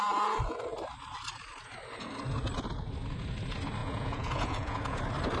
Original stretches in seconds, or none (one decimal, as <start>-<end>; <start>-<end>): 0.0-3.8; 5.0-5.4